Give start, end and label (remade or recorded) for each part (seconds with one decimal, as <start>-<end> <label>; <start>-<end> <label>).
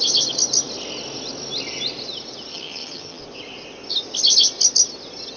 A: 0.0-2.5 recorded; 2.5-3.2 remade; 3.2-5.4 recorded